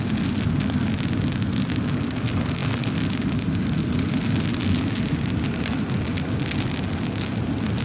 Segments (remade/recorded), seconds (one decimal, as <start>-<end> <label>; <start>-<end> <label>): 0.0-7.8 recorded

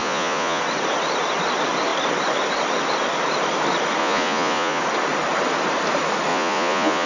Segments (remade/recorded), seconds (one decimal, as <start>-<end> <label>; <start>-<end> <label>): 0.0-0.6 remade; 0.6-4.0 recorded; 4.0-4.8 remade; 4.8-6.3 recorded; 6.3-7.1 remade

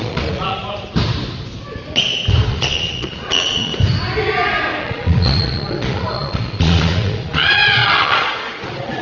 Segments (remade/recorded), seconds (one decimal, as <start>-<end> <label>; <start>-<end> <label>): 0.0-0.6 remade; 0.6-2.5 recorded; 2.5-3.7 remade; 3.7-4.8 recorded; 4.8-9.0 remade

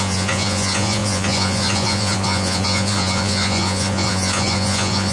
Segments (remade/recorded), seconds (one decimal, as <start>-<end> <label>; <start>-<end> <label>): 0.0-5.1 remade

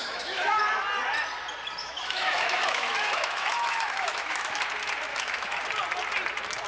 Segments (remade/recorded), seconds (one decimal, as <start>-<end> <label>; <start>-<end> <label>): 0.0-0.6 remade; 0.6-1.8 recorded; 1.8-4.6 remade; 4.6-5.1 recorded; 5.1-5.6 remade; 5.6-6.7 recorded

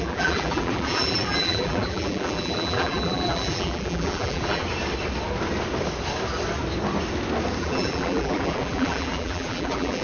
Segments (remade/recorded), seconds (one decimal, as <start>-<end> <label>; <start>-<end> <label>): 0.0-4.6 remade; 4.6-7.6 recorded; 7.6-10.0 remade